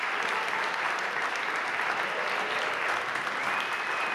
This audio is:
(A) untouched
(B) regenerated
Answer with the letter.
A